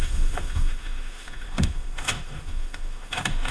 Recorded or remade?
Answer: remade